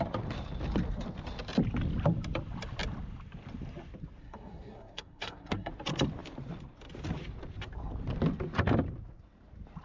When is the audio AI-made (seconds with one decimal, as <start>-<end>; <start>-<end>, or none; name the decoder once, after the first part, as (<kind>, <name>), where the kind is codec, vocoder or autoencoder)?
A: 4.2-5.7 (codec, SNAC)